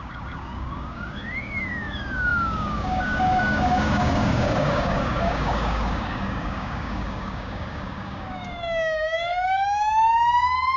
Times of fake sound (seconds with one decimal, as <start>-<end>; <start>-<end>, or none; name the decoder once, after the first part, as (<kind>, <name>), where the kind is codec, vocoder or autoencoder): 0.0-10.8 (codec, DAC)